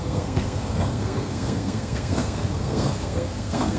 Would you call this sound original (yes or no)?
no